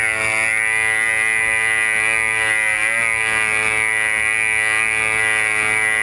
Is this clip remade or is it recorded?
recorded